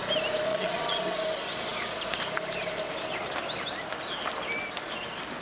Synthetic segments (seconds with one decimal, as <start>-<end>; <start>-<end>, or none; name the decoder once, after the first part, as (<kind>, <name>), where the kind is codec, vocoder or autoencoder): 0.5-1.0 (vocoder, WaveNeXt)